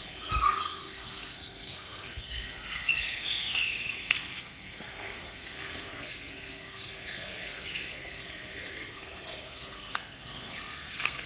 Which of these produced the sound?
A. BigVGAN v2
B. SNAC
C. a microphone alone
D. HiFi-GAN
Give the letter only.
B